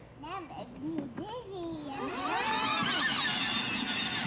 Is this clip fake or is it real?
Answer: real